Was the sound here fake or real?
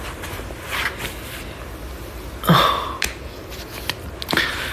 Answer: real